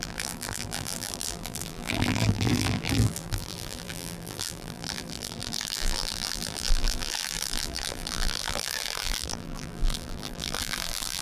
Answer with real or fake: fake